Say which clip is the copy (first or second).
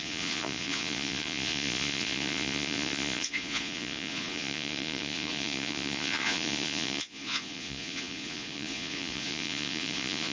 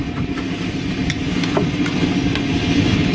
first